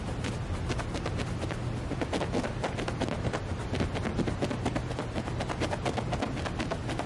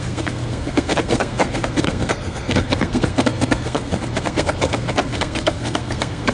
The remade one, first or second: second